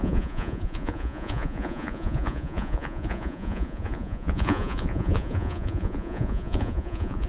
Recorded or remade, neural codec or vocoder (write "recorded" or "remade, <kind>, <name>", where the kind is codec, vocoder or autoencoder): remade, vocoder, Vocos